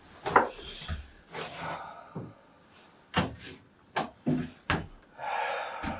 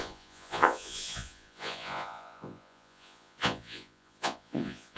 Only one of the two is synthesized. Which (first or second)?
second